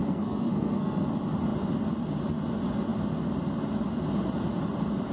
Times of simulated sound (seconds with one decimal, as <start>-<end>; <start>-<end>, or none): 0.0-1.1